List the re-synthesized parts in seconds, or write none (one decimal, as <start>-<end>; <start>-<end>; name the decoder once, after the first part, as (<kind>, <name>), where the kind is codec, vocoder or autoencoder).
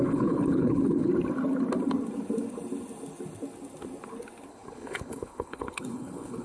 0.0-1.1 (codec, HILCodec); 4.5-6.4